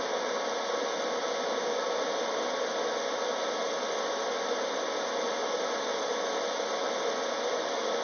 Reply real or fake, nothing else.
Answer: real